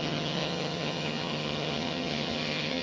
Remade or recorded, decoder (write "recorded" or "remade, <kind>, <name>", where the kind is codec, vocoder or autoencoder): remade, vocoder, HiFi-GAN